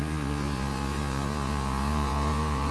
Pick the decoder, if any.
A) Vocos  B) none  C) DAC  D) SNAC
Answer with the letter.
A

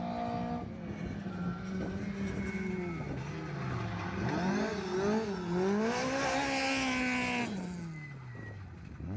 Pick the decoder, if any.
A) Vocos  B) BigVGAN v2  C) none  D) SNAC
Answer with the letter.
C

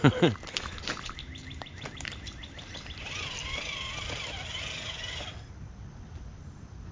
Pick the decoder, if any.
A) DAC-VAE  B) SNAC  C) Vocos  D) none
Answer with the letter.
D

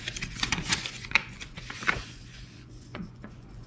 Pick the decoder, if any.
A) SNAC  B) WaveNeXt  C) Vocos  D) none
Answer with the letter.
C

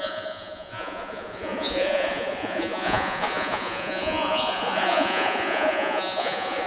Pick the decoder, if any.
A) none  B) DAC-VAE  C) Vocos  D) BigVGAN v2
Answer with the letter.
C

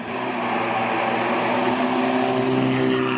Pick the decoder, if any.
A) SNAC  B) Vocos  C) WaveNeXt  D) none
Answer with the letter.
D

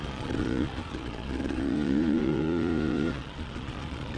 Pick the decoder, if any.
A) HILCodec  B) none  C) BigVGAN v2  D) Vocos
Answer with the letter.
D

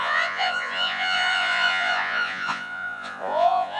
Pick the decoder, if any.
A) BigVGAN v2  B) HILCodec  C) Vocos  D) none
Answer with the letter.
C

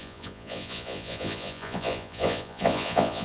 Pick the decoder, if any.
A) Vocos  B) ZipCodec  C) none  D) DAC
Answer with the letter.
A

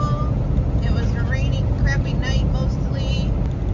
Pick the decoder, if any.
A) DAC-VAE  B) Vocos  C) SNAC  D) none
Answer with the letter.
D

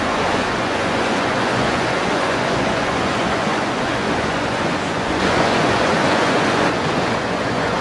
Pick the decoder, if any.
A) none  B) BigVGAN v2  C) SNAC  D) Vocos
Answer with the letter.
D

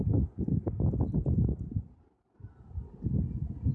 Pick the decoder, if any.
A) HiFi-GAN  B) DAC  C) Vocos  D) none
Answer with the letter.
D